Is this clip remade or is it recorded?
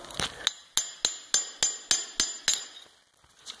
recorded